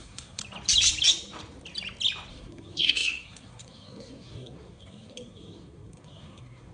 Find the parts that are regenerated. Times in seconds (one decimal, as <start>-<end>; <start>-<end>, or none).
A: 0.0-0.4; 2.3-6.7